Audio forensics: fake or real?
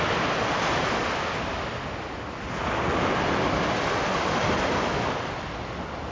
real